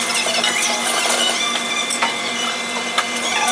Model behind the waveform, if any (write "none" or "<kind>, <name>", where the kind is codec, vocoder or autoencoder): none